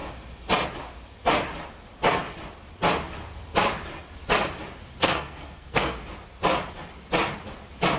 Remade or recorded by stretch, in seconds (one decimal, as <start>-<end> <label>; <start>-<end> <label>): 0.0-5.0 recorded; 5.0-6.0 remade; 6.0-8.0 recorded